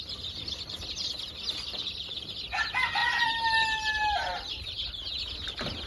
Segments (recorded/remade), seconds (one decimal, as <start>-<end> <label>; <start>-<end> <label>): 0.0-5.9 recorded